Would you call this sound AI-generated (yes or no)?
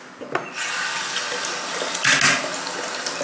no